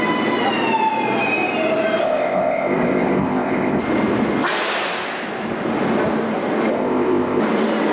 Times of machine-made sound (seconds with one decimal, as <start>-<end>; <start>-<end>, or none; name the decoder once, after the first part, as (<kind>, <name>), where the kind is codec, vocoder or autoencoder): 2.0-3.8 (codec, ZipCodec); 6.7-7.4

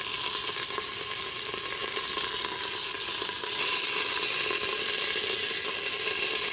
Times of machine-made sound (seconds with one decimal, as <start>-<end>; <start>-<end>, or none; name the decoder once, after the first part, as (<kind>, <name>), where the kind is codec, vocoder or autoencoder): none